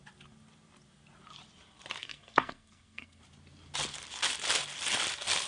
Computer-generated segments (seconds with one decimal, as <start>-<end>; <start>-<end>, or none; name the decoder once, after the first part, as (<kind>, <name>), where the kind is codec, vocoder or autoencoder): 2.0-3.2 (codec, SNAC)